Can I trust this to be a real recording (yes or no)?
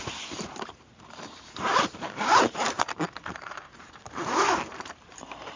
no